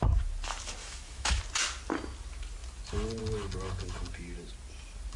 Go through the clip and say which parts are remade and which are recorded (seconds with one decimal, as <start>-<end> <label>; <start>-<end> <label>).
0.0-0.8 recorded; 0.8-1.4 remade; 1.4-5.2 recorded